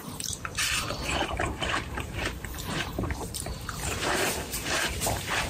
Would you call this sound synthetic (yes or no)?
yes